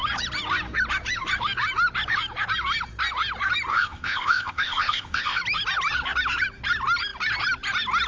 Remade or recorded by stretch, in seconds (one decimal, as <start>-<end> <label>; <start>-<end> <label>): 0.0-3.7 recorded; 3.7-5.4 remade; 5.4-8.1 recorded